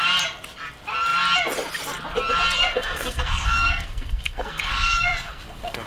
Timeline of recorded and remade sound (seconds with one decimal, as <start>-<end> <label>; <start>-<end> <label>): 0.0-2.6 recorded; 2.6-5.9 remade

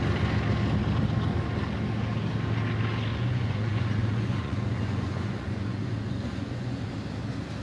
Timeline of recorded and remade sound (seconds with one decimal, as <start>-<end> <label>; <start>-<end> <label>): 0.0-3.1 recorded; 3.1-6.9 remade; 6.9-7.6 recorded

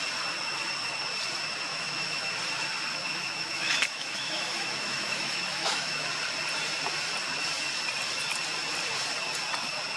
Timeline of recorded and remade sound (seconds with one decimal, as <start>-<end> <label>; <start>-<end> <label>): 0.0-1.7 recorded; 1.7-2.3 remade; 2.3-2.9 recorded; 2.9-6.1 remade; 6.1-10.0 recorded

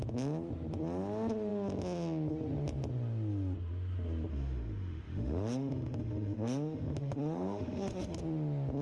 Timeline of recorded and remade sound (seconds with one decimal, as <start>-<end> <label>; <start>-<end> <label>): 0.0-4.3 recorded; 4.3-8.2 remade; 8.2-8.8 recorded

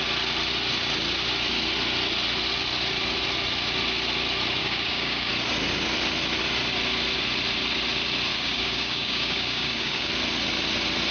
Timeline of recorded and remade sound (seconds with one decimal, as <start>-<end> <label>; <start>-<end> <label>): 0.0-4.6 recorded; 4.6-5.3 remade; 5.3-8.3 recorded; 8.3-10.1 remade; 10.1-11.1 recorded

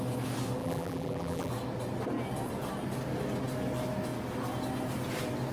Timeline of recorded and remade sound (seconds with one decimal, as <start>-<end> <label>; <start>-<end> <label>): 0.0-0.6 recorded; 0.6-1.5 remade; 1.5-5.5 recorded